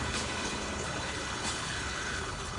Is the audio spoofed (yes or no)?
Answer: yes